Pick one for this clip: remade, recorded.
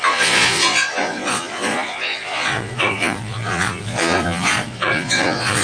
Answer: remade